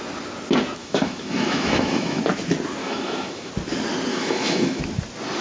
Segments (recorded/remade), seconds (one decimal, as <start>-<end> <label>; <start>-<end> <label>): 0.0-0.8 recorded; 0.8-2.2 remade; 2.2-2.8 recorded; 2.8-3.5 remade; 3.5-4.1 recorded; 4.1-4.8 remade; 4.8-5.4 recorded